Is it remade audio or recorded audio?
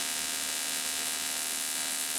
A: recorded